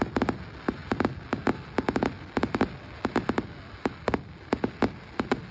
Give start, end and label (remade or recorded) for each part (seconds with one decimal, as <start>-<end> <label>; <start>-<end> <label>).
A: 0.0-5.5 recorded